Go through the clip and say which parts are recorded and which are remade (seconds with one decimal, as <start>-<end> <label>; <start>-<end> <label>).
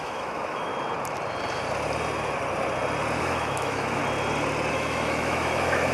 0.0-0.7 remade; 0.7-3.2 recorded; 3.2-4.0 remade; 4.0-4.7 recorded; 4.7-5.9 remade